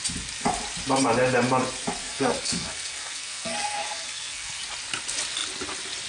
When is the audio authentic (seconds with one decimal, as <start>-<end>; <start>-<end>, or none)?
0.0-2.0; 4.6-6.1